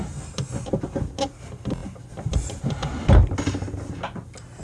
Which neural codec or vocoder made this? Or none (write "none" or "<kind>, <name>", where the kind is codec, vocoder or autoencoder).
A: none